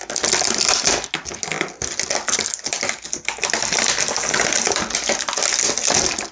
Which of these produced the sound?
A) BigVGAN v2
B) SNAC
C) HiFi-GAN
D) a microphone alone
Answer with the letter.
D